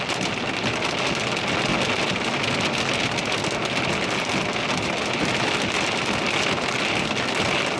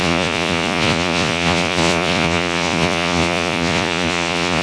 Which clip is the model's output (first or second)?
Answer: second